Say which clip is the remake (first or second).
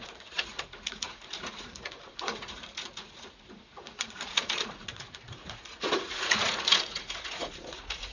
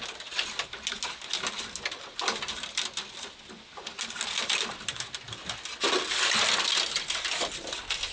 first